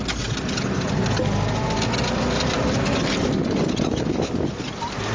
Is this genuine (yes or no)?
yes